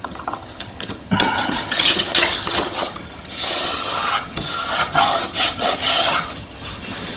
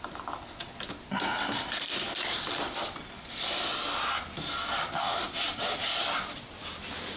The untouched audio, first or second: second